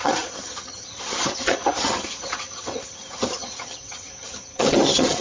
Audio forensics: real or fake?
fake